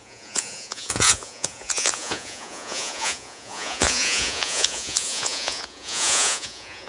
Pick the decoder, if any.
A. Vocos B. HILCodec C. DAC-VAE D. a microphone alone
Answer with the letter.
A